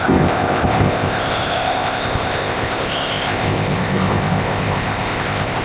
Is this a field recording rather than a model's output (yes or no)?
no